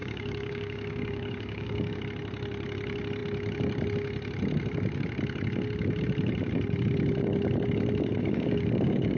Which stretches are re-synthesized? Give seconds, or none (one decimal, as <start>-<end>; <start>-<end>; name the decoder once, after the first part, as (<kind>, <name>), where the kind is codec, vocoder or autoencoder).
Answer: 0.0-2.0 (codec, DAC); 8.2-9.2